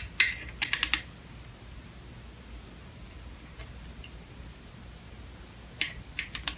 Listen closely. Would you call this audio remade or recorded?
recorded